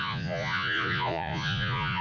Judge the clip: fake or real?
fake